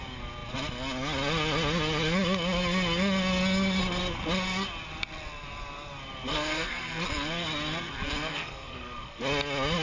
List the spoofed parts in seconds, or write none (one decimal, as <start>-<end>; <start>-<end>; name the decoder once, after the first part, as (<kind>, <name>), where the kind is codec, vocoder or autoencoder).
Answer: 6.3-6.9 (codec, SNAC); 8.3-9.2